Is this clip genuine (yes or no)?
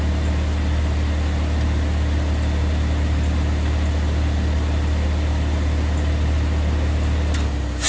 yes